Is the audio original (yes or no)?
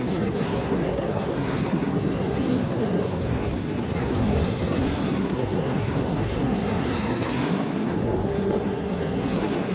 no